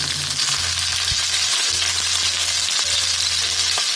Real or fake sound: real